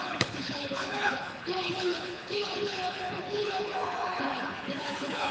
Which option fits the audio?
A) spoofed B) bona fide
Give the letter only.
A